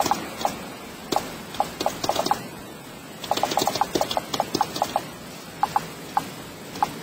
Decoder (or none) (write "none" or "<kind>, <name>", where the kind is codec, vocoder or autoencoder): none